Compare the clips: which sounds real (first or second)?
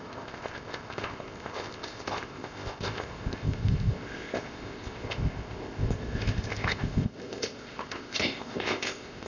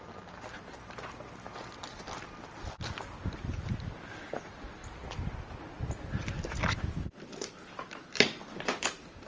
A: second